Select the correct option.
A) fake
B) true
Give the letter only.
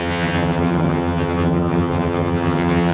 A